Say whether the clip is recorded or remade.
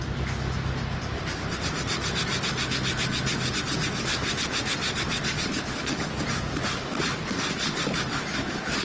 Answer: recorded